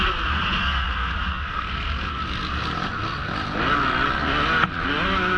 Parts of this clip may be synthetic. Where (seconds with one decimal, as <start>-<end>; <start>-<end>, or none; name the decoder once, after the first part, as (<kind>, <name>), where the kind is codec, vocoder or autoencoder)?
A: 0.6-2.1 (codec, SNAC)